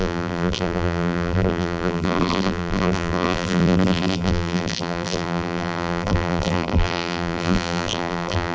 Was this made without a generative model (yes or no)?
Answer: no